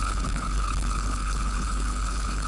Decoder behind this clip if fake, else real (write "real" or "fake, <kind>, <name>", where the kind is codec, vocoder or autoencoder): fake, codec, HILCodec